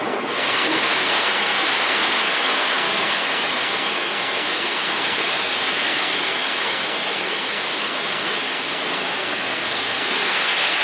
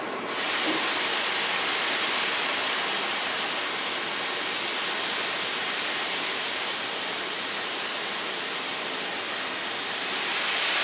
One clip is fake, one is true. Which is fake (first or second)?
first